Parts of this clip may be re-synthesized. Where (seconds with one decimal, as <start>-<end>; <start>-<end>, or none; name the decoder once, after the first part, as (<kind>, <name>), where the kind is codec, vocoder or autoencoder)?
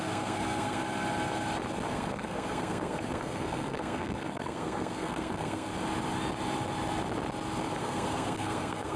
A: 0.0-0.8 (codec, SNAC); 1.9-5.7; 7.8-9.0